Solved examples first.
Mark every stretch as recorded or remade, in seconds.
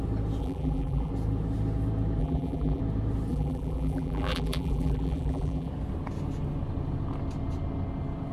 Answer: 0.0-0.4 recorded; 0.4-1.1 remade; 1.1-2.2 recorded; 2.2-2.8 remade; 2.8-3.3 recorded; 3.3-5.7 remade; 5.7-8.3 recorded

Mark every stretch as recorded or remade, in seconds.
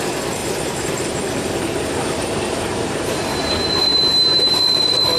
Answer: 0.0-0.4 recorded; 0.4-3.5 remade; 3.5-3.9 recorded; 3.9-4.6 remade; 4.6-5.2 recorded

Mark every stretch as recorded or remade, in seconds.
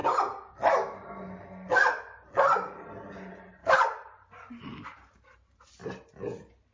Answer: 0.0-3.6 recorded; 3.6-5.7 remade; 5.7-6.7 recorded